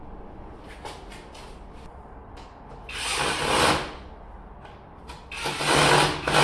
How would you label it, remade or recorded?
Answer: recorded